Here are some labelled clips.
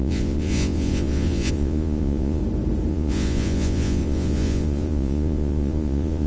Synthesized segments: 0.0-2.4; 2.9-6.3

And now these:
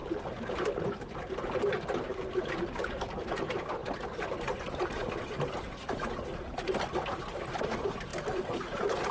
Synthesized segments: none